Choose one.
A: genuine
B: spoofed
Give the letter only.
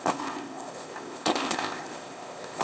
B